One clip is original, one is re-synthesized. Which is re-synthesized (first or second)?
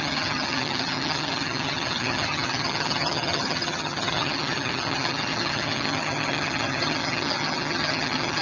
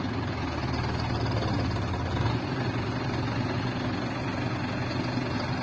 first